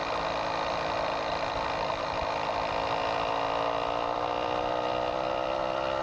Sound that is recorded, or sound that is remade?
remade